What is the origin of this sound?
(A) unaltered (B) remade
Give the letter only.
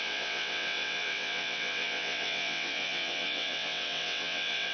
B